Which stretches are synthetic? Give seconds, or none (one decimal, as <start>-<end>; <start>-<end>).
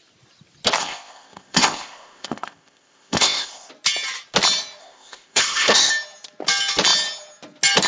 0.8-3.7; 4.8-5.9